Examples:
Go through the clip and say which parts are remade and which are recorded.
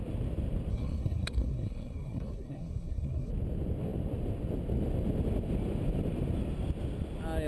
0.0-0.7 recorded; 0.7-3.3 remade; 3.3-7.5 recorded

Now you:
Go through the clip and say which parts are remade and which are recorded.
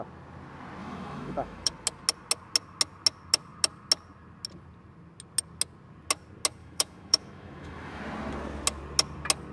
0.0-0.8 recorded; 0.8-1.7 remade; 1.7-6.6 recorded; 6.6-8.0 remade; 8.0-9.5 recorded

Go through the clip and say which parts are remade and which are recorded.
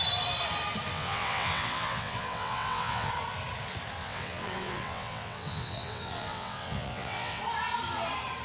0.0-0.9 recorded; 0.9-3.1 remade; 3.1-4.0 recorded; 4.0-7.4 remade; 7.4-8.4 recorded